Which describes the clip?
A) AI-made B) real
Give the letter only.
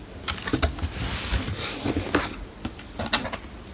B